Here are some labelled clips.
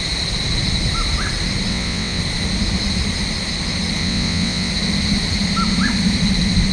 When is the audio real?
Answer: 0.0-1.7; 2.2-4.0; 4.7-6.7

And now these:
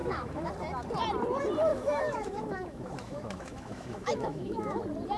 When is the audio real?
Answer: 0.5-1.7; 4.8-5.2

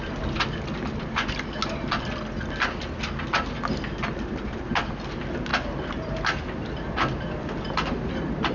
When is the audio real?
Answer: 0.0-8.5

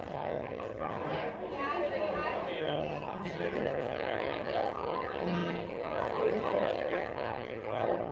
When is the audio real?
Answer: 1.0-2.6

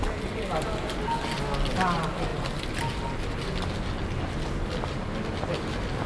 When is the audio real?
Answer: 0.0-6.1

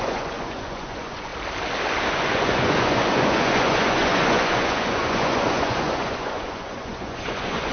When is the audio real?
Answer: 1.3-2.1

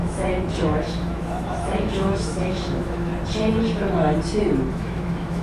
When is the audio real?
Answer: 3.1-4.7